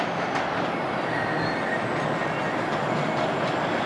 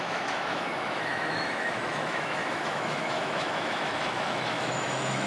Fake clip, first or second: second